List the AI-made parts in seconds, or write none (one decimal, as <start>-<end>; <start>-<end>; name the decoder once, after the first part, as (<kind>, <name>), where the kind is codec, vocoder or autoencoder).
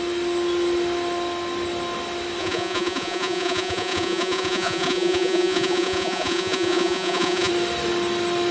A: 2.4-7.5 (vocoder, Vocos)